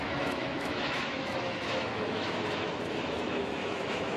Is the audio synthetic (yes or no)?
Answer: yes